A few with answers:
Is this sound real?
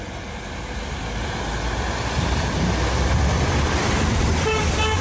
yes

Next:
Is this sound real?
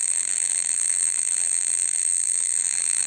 no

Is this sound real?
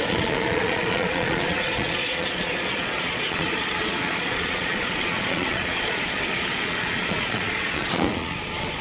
no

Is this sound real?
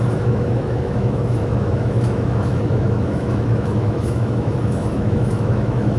no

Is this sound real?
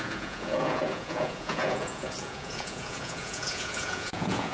no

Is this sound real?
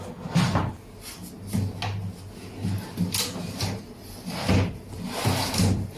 yes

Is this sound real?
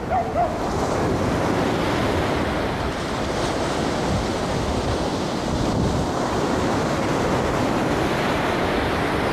yes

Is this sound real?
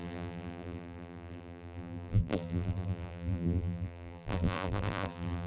no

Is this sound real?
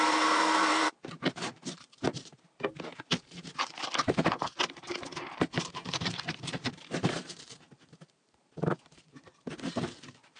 no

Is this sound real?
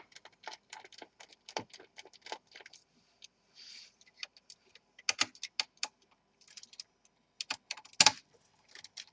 yes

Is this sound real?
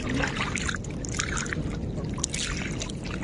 yes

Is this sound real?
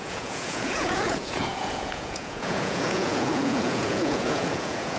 no